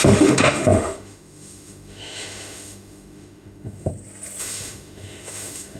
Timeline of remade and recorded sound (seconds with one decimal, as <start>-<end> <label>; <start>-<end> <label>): 0.0-3.9 remade; 3.9-4.4 recorded; 4.4-5.8 remade